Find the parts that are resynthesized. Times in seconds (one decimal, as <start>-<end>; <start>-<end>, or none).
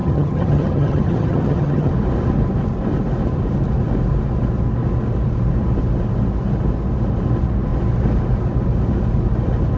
0.0-1.9